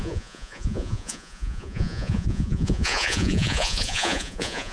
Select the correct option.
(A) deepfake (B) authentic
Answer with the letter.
A